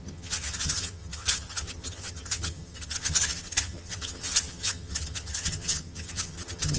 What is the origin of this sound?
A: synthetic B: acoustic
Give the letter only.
A